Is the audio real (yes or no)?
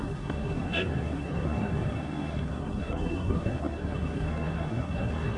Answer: no